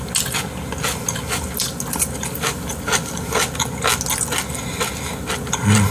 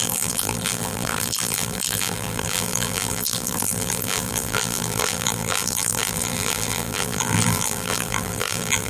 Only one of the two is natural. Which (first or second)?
first